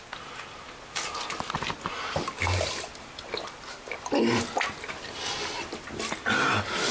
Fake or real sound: real